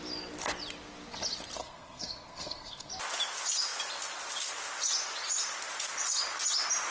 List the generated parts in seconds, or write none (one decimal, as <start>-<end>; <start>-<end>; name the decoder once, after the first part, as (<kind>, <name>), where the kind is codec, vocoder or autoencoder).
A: 1.6-2.9 (codec, SNAC)